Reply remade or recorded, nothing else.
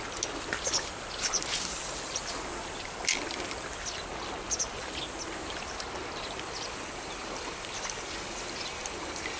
recorded